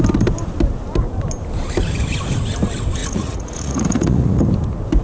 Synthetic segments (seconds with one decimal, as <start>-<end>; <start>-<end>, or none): 3.0-4.4